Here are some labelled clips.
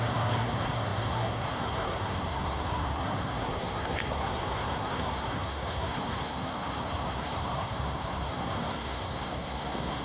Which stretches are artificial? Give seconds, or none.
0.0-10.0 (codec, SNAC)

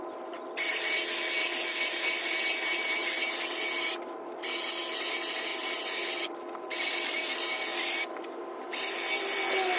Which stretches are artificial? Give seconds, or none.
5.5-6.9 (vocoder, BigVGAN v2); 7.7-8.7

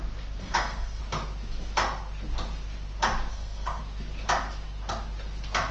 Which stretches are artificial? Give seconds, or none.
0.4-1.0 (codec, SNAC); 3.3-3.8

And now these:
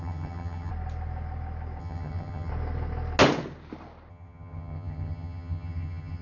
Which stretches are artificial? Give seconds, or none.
0.0-0.7 (vocoder, HiFi-GAN); 1.8-2.5; 4.1-6.2

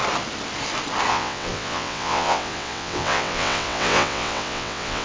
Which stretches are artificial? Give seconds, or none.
1.1-5.0 (vocoder, WaveNeXt)

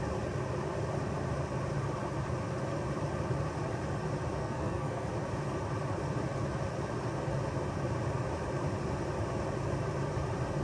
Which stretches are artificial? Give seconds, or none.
4.4-5.1 (codec, SNAC)

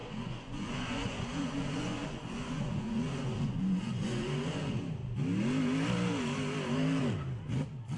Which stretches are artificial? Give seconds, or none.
0.0-4.8 (vocoder, Vocos)

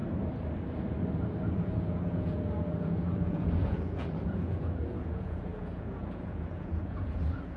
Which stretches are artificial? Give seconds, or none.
1.7-7.6 (vocoder, Vocos)